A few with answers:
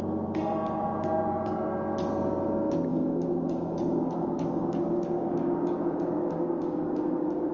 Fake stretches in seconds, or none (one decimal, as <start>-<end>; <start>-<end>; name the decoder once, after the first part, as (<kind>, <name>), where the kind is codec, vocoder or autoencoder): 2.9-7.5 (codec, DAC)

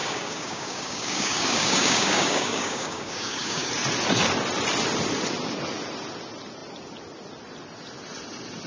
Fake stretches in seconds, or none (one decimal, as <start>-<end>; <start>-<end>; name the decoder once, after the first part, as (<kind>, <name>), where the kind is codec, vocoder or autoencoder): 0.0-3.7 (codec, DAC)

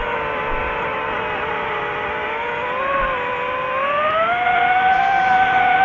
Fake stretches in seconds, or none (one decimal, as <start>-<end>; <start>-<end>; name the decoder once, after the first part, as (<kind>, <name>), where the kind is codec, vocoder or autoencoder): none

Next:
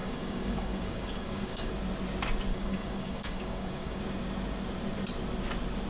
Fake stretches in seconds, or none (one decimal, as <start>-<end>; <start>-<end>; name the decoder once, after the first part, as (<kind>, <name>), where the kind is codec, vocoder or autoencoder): 0.0-1.7 (codec, DAC); 2.5-4.0

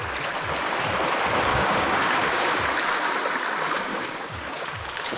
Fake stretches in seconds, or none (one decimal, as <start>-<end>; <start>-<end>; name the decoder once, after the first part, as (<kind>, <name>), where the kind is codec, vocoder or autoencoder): 1.5-2.6 (codec, DAC); 3.9-5.2